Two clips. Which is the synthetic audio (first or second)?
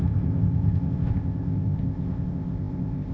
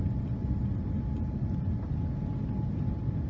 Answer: first